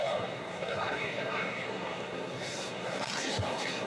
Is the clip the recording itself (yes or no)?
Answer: no